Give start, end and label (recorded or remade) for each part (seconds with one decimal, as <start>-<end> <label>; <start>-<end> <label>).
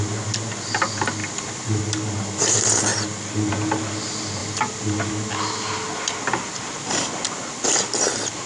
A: 0.0-2.9 recorded; 2.9-3.5 remade; 3.5-4.4 recorded; 4.4-5.1 remade; 5.1-8.5 recorded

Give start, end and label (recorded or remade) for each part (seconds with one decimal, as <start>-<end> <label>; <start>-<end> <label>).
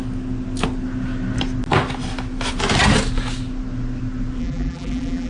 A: 0.0-4.4 recorded; 4.4-5.3 remade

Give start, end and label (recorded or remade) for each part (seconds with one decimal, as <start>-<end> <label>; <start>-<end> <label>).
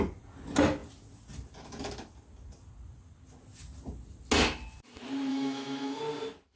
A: 0.0-5.3 recorded; 5.3-6.0 remade; 6.0-6.6 recorded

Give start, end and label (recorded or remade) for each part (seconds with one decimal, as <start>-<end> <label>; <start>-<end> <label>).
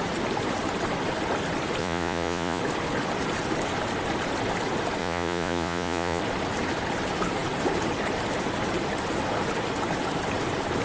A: 0.0-1.8 recorded; 1.8-2.6 remade; 2.6-5.0 recorded; 5.0-6.2 remade; 6.2-10.8 recorded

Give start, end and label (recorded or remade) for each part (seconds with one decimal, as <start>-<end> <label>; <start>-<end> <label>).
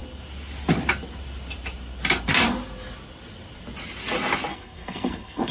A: 0.0-4.5 recorded; 4.5-5.5 remade